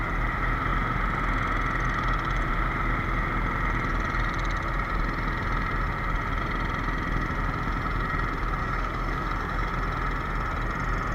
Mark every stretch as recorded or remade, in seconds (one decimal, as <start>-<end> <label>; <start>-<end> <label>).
0.0-8.6 recorded; 8.6-9.7 remade; 9.7-11.1 recorded

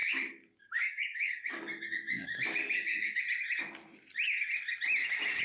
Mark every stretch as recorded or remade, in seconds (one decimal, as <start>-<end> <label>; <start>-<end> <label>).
0.0-3.2 remade; 3.2-5.4 recorded